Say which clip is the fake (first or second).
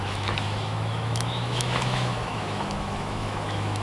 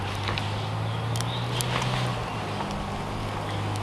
first